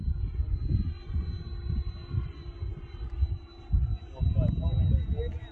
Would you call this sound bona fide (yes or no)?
yes